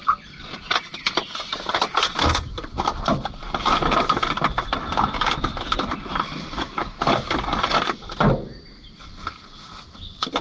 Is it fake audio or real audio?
real